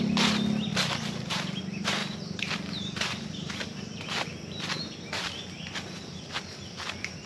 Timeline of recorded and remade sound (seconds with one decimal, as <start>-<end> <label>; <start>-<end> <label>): 0.0-0.7 recorded; 0.7-1.6 remade; 1.6-2.0 recorded; 2.0-6.2 remade; 6.2-7.3 recorded